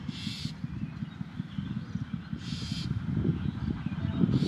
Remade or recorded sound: recorded